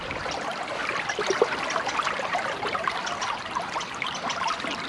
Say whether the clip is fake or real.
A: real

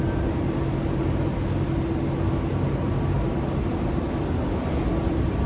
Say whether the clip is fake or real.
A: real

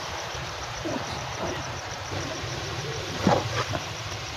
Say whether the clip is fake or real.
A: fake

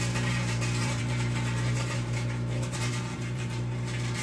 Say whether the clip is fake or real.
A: fake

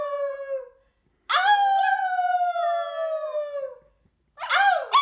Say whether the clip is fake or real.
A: real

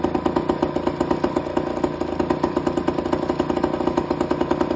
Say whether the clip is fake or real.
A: real